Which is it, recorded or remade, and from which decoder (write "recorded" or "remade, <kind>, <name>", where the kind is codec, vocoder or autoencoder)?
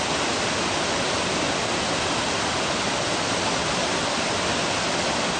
recorded